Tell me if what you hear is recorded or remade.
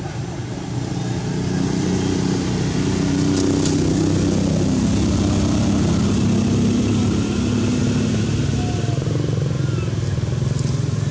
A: recorded